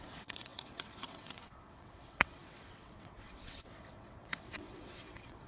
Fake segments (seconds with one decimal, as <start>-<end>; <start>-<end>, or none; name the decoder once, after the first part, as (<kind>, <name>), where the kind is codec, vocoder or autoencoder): 0.0-5.5 (vocoder, WaveNeXt)